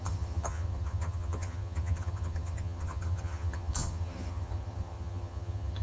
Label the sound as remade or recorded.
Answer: remade